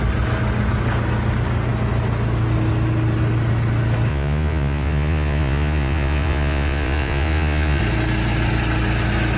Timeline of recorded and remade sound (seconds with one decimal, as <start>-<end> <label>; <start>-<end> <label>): 0.0-4.1 recorded; 4.1-7.8 remade; 7.8-9.4 recorded